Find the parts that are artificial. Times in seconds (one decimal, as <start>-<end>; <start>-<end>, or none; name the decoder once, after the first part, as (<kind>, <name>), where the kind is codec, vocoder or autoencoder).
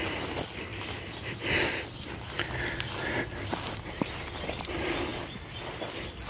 none